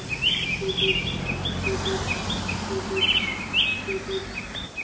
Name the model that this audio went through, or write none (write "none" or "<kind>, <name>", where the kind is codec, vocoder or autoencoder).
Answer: none